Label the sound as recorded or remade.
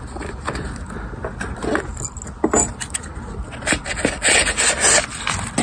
recorded